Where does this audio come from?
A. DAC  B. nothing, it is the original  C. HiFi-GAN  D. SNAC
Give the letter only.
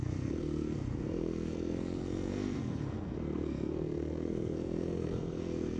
D